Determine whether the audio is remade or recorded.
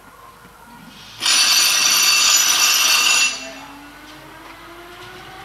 recorded